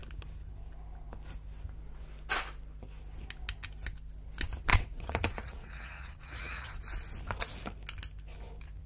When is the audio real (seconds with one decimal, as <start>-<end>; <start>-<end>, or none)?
0.0-4.7; 6.8-8.9